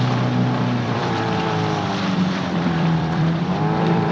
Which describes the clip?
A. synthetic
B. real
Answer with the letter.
A